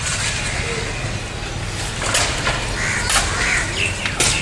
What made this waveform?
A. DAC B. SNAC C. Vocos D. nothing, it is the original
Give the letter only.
D